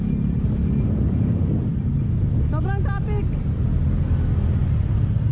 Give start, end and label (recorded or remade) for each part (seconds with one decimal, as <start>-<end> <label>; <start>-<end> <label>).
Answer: 0.0-5.3 recorded